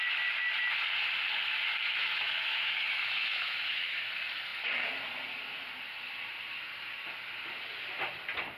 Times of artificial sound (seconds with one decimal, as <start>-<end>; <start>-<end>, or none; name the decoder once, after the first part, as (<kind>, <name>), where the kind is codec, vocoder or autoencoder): 1.7-4.1 (autoencoder, DAC-VAE)

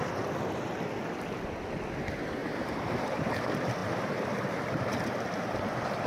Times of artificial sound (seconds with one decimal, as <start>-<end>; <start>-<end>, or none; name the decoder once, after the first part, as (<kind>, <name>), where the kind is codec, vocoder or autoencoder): 2.4-3.4 (vocoder, BigVGAN v2); 3.8-6.1

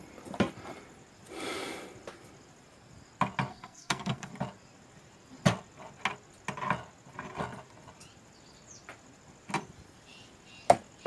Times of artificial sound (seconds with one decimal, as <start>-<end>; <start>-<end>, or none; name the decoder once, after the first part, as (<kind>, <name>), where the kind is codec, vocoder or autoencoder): 3.5-4.3 (codec, SNAC)